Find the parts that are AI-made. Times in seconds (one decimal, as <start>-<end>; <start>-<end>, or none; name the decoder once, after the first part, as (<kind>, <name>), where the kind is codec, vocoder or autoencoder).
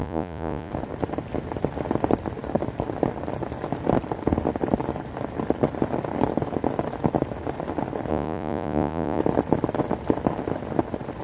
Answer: 0.0-0.7 (vocoder, Vocos); 8.1-9.2